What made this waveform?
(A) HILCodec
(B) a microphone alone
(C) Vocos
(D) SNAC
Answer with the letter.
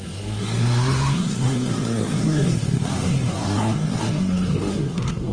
D